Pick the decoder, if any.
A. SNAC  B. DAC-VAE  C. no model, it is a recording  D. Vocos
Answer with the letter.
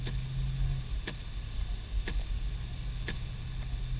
C